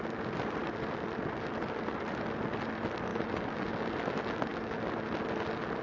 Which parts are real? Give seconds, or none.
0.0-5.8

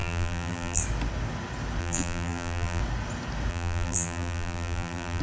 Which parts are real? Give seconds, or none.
0.8-1.8; 2.8-3.5

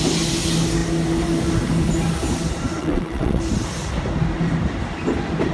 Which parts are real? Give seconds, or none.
0.0-2.8; 3.4-5.5